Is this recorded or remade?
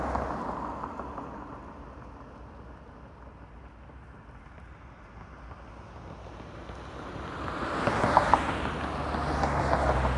recorded